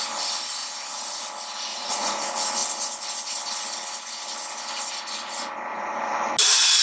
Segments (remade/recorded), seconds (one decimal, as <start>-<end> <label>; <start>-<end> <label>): 0.0-0.6 recorded; 0.6-1.2 remade; 1.2-1.7 recorded; 1.7-2.2 remade; 2.2-5.7 recorded; 5.7-6.3 remade; 6.3-6.8 recorded